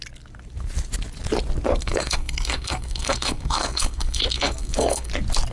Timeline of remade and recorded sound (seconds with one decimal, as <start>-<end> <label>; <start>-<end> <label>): 0.0-1.8 recorded; 1.8-5.1 remade; 5.1-5.5 recorded